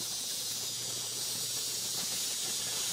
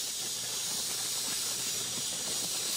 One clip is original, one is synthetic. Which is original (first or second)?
second